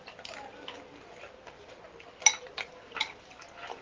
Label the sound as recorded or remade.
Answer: recorded